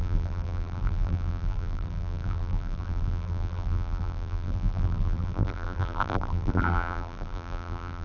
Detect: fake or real fake